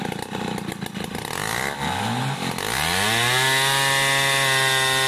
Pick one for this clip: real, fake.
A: real